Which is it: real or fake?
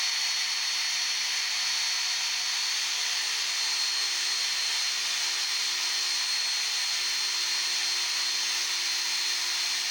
real